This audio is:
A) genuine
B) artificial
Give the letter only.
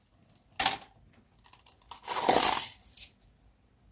A